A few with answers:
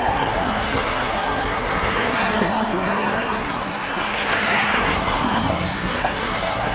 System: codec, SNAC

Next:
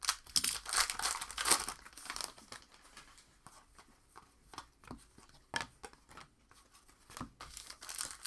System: none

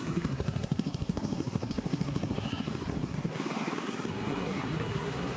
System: codec, SNAC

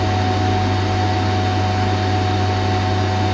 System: none